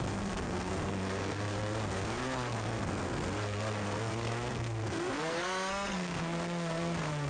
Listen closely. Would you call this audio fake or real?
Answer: fake